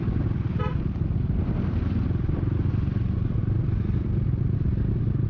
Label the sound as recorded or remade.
remade